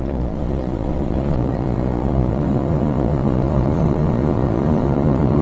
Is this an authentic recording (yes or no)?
no